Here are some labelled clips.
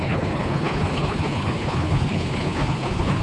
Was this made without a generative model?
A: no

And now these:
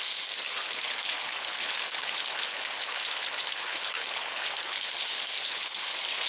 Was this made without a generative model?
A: no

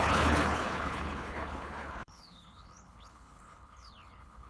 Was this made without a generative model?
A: no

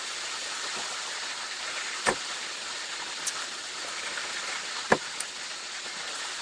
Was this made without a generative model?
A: yes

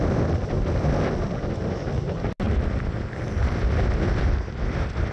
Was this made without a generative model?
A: yes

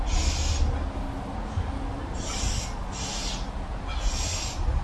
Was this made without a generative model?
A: yes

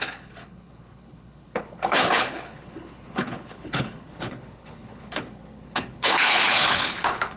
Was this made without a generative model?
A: no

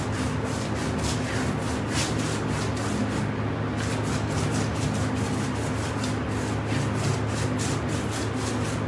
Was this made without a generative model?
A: yes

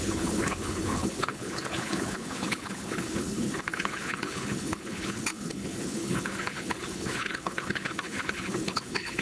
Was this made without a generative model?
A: no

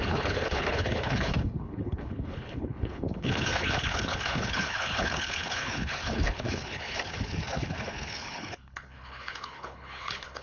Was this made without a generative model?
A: no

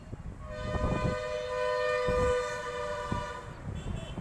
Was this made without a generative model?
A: yes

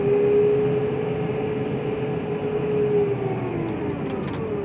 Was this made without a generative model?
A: yes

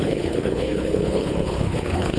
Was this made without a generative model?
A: no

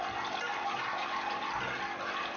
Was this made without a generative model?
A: yes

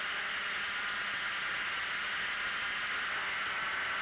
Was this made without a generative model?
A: yes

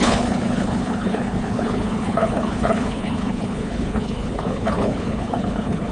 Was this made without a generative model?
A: no